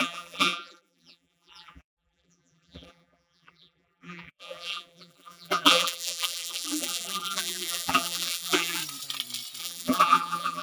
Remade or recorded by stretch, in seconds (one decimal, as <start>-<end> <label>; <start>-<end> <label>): 0.0-8.8 remade; 8.8-9.6 recorded; 9.6-10.6 remade